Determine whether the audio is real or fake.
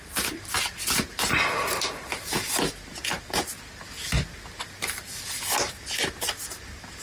real